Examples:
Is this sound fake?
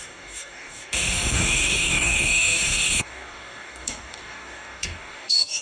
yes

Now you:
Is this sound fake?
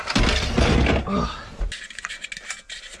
no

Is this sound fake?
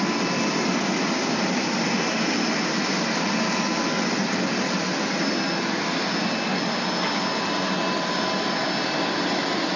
no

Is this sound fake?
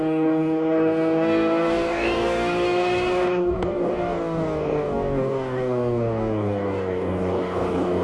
yes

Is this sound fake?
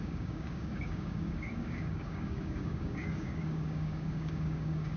yes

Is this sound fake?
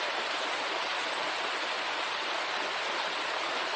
no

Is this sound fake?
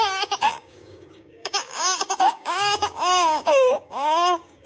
yes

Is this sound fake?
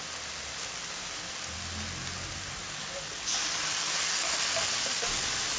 no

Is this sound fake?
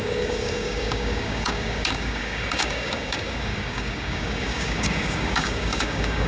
yes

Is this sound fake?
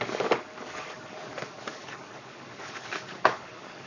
yes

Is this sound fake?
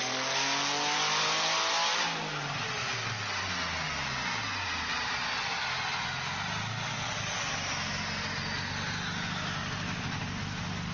no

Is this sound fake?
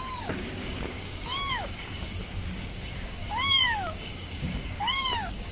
yes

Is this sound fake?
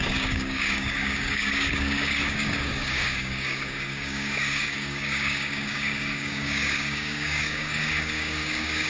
yes